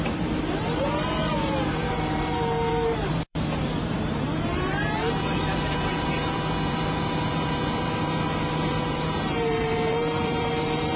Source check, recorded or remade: remade